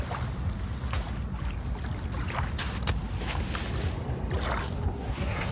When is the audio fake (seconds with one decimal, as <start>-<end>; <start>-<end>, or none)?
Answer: 4.6-5.5